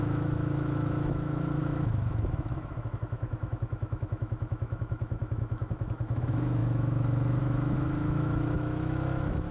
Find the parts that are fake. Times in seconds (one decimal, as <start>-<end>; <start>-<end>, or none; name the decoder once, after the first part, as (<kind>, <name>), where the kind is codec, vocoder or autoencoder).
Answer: 0.0-9.5 (autoencoder, DAC-VAE)